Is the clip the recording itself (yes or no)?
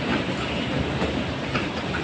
yes